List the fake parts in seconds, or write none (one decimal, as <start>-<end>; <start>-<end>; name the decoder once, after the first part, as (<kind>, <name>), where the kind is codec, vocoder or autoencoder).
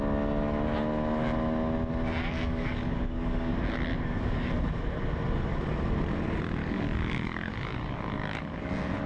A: 2.2-3.5 (codec, DAC); 3.9-4.5; 6.6-8.7